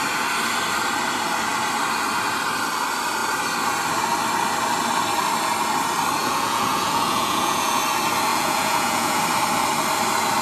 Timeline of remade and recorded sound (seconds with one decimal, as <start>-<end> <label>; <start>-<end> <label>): 0.0-6.2 recorded; 6.2-7.8 remade; 7.8-8.3 recorded; 8.3-9.2 remade; 9.2-10.4 recorded